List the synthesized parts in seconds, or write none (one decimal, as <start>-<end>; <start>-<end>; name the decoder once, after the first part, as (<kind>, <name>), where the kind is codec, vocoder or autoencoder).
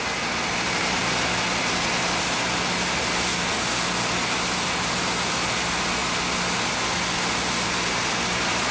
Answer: none